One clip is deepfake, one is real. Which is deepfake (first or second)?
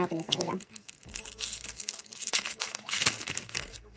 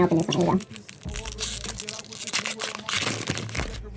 first